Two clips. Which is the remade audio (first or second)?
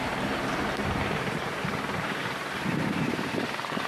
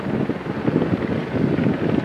first